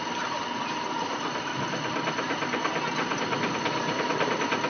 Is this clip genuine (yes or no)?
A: yes